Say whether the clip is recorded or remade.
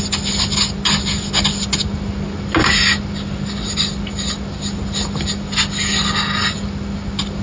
recorded